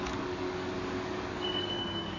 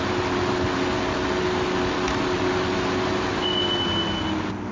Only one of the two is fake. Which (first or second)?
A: first